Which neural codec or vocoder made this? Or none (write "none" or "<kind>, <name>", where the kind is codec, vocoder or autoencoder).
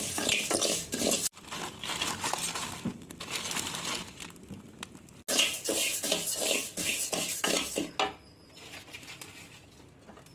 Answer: none